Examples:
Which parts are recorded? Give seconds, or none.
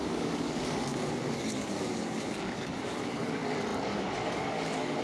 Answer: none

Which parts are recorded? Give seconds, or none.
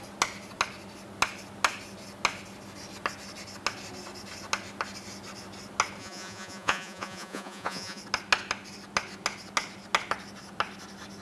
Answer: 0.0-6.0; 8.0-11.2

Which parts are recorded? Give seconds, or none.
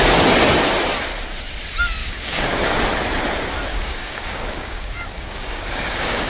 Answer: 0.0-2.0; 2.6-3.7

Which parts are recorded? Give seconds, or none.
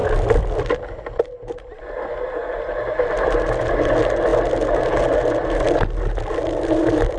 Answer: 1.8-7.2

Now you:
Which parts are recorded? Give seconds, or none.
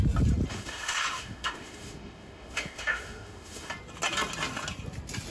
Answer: 0.0-0.5; 3.7-5.3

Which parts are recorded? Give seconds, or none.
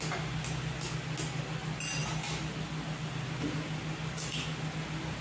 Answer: 0.0-5.2